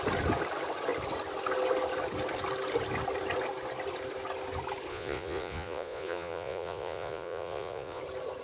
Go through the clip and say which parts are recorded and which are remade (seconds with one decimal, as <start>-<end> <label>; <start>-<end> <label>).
0.0-4.9 recorded; 4.9-8.0 remade; 8.0-8.4 recorded